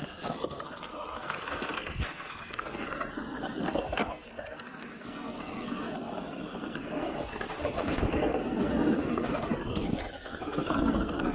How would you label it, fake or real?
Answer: fake